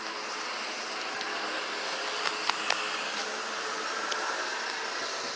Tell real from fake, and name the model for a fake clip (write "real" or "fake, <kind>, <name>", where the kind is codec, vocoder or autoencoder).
real